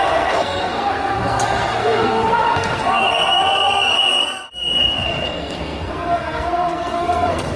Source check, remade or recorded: remade